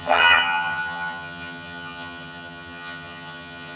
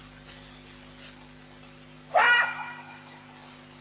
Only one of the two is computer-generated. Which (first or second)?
first